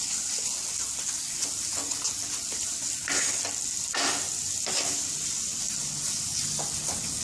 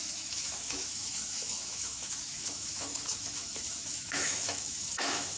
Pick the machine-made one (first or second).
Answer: second